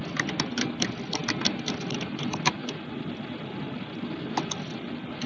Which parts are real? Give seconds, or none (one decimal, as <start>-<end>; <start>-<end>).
0.0-5.3